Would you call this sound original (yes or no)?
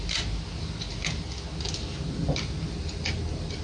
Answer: yes